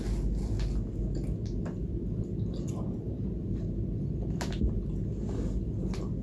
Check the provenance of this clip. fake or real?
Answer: real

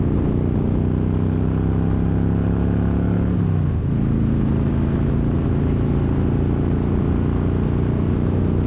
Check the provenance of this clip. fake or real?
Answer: real